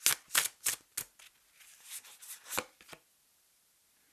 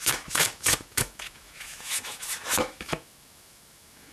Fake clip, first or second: second